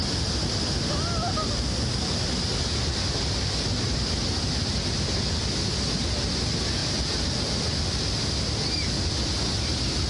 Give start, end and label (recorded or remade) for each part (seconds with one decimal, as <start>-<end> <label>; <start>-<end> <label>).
0.0-10.1 recorded